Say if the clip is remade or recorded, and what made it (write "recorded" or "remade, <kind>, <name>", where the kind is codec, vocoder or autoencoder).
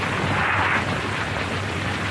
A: recorded